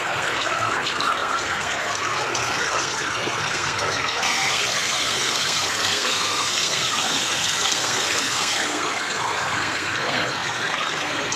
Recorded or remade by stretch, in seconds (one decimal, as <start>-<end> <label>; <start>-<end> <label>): 0.0-11.4 remade

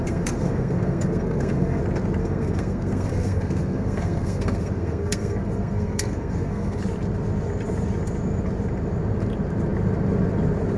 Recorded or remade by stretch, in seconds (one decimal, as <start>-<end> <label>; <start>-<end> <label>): 0.0-1.8 remade; 1.8-2.2 recorded; 2.2-6.8 remade; 6.8-10.8 recorded

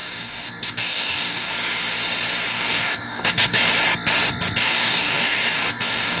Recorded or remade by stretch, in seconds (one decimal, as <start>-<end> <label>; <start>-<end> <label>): 0.0-1.5 remade; 1.5-2.5 recorded; 2.5-3.7 remade; 3.7-4.6 recorded; 4.6-6.2 remade

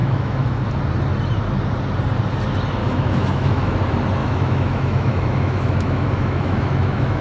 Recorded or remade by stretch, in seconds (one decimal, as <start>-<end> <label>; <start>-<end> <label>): 0.0-0.8 remade; 0.8-2.8 recorded; 2.8-3.8 remade; 3.8-4.2 recorded; 4.2-7.2 remade

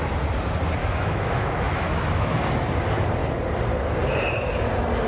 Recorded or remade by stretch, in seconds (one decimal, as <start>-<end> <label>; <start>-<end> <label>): 0.0-0.8 recorded; 0.8-2.4 remade; 2.4-5.1 recorded

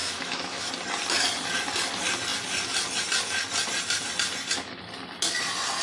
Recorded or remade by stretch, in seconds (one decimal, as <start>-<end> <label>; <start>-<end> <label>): 0.0-0.7 remade; 0.7-5.8 recorded